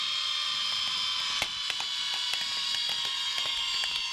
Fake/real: real